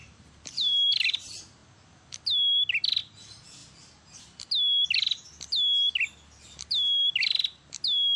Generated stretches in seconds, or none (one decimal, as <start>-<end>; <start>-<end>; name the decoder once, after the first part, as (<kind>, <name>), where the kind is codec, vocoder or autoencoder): 0.0-0.9 (vocoder, BigVGAN v2)